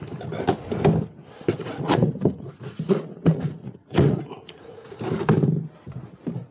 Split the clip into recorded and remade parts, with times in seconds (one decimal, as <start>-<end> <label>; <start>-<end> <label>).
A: 0.0-1.6 recorded; 1.6-4.9 remade; 4.9-6.5 recorded